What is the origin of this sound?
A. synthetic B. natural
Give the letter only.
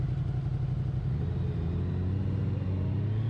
B